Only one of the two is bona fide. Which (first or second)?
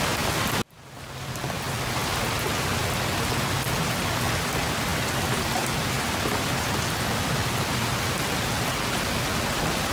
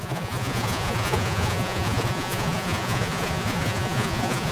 first